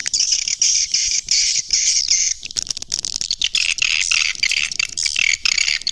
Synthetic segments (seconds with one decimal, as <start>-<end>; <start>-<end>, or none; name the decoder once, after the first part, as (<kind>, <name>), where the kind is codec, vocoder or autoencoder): 0.0-2.0 (vocoder, BigVGAN v2)